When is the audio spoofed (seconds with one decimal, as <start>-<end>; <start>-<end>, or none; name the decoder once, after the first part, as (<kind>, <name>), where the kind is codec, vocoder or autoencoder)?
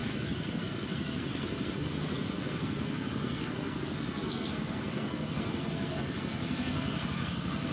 0.0-7.7 (codec, SNAC)